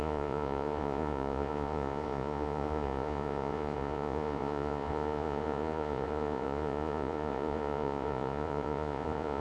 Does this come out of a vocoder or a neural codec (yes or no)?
yes